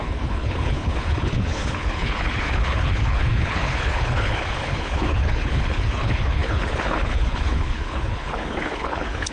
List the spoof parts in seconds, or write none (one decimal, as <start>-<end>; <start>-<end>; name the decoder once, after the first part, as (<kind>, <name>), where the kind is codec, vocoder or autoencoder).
0.0-9.3 (codec, HILCodec)